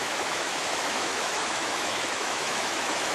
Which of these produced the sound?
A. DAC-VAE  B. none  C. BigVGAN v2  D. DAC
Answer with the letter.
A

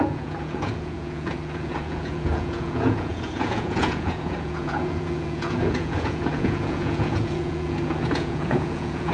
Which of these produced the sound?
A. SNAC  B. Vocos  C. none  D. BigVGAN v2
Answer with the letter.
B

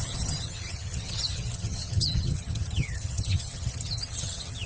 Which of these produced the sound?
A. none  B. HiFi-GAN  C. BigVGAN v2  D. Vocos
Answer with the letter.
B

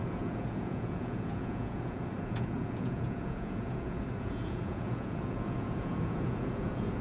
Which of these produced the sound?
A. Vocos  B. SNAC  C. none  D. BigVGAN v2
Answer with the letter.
A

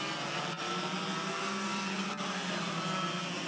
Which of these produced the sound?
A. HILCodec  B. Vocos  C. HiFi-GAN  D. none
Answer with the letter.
D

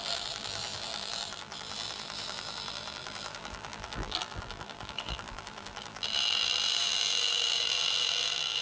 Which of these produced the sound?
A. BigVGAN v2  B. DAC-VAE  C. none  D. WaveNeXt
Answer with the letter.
A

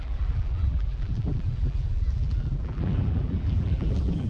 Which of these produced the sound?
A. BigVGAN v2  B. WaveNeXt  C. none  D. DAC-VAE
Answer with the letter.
A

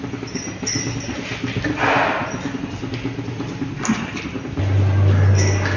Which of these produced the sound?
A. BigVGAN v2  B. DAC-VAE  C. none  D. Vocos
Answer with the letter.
C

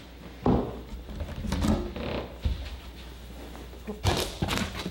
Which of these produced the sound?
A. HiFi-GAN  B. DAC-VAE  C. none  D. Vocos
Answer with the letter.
C